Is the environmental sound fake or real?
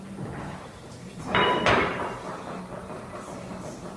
real